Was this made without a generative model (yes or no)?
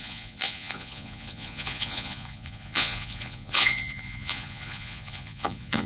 no